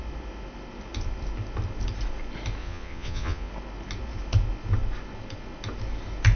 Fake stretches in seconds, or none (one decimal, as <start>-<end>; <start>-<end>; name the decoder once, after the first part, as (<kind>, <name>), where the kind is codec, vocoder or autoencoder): 2.6-3.5 (vocoder, Vocos)